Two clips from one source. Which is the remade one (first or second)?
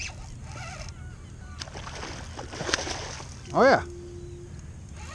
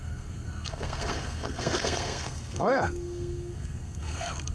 second